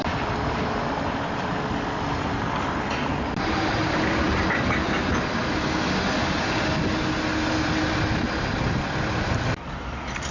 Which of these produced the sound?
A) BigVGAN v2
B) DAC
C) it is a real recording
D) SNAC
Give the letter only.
C